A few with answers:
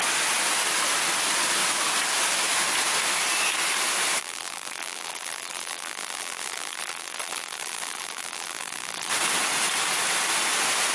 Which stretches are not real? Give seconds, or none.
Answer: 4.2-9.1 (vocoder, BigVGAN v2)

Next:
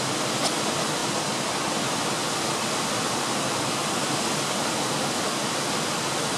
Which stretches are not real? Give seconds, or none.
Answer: 1.0-1.8 (vocoder, BigVGAN v2); 2.2-6.0

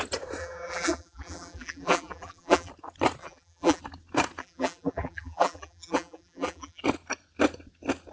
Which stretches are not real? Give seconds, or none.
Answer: 0.4-2.7 (vocoder, BigVGAN v2); 3.2-3.8; 4.4-6.8

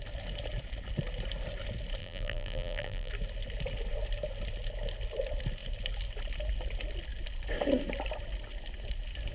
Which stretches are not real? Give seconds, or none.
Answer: 2.0-3.1 (vocoder, BigVGAN v2)

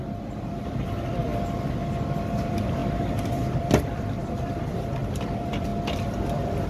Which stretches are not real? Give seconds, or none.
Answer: 0.0-1.3 (vocoder, BigVGAN v2); 2.2-6.7

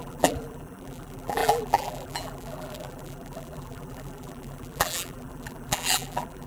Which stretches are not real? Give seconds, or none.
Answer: 0.0-6.5 (vocoder, BigVGAN v2)

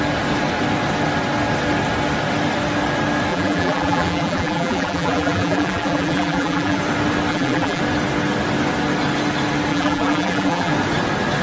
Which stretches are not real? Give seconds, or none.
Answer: 3.3-6.8 (vocoder, BigVGAN v2); 7.3-7.8; 9.7-10.7

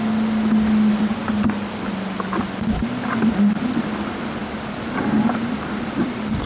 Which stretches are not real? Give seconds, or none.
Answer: 4.4-6.5 (vocoder, BigVGAN v2)